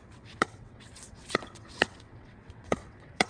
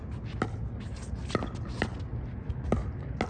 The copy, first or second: first